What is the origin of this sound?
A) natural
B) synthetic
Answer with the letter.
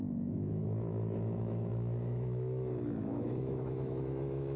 B